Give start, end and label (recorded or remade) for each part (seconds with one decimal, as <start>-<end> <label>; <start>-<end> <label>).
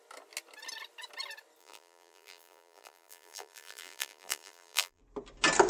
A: 0.0-1.6 recorded; 1.6-5.0 remade; 5.0-5.7 recorded